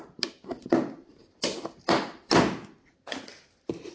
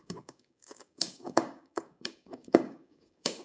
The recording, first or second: first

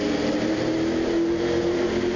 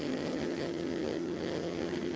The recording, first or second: first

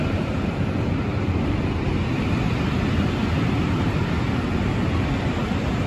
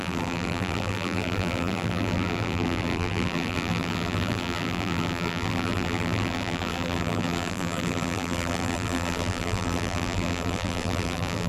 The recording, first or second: first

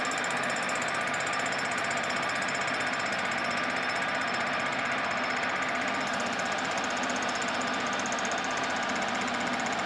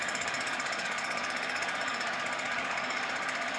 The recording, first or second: first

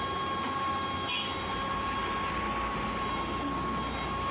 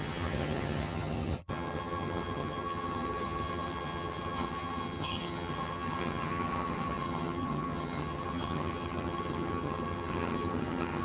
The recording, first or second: first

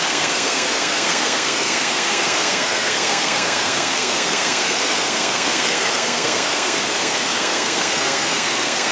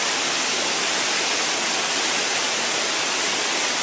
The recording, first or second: second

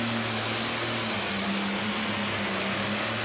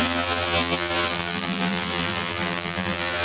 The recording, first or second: first